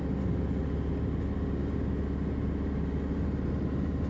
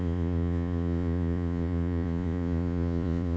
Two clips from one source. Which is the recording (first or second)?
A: first